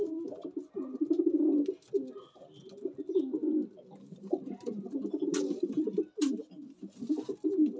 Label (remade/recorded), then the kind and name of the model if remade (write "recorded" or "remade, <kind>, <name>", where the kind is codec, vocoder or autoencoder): recorded